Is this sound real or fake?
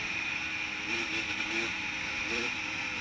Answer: real